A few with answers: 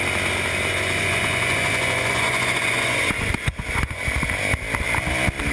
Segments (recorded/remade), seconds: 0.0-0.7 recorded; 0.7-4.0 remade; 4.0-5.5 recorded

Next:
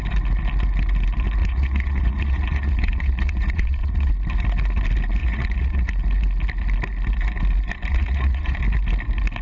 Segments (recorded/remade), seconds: 0.0-1.4 recorded; 1.4-4.1 remade; 4.1-5.2 recorded; 5.2-5.9 remade; 5.9-7.9 recorded; 7.9-8.6 remade; 8.6-9.4 recorded

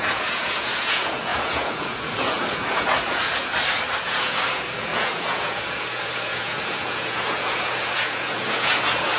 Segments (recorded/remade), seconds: 0.0-3.5 remade; 3.5-4.1 recorded; 4.1-9.2 remade

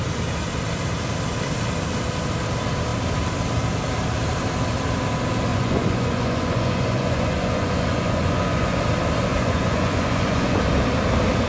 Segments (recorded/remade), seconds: 0.0-5.5 recorded; 5.5-8.8 remade; 8.8-9.3 recorded; 9.3-10.6 remade; 10.6-11.5 recorded

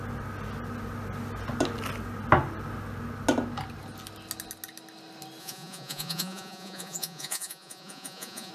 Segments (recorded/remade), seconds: 0.0-5.4 recorded; 5.4-8.5 remade

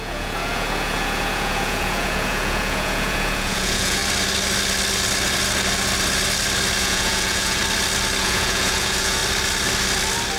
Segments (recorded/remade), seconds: 0.0-4.0 remade; 4.0-6.8 recorded; 6.8-7.6 remade; 7.6-8.2 recorded; 8.2-9.2 remade; 9.2-10.4 recorded

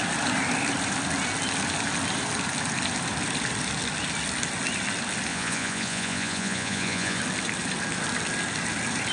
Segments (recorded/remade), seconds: 0.0-5.3 recorded; 5.3-7.2 remade; 7.2-9.1 recorded

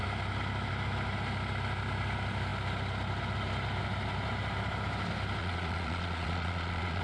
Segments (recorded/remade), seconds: 0.0-5.4 recorded; 5.4-7.0 remade